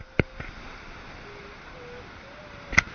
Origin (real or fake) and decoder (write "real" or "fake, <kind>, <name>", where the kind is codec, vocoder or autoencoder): real